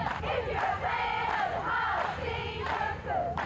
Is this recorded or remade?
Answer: recorded